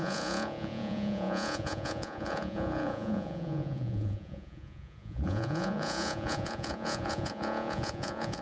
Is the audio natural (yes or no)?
no